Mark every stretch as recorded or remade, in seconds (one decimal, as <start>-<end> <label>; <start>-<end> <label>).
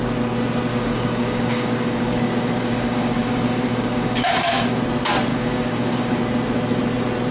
0.0-0.7 recorded; 0.7-4.8 remade; 4.8-5.3 recorded; 5.3-6.2 remade; 6.2-7.3 recorded